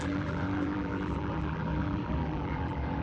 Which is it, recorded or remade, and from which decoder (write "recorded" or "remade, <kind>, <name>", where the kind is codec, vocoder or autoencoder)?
remade, vocoder, BigVGAN v2